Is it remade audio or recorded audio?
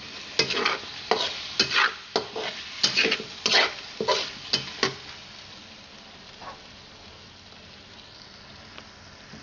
recorded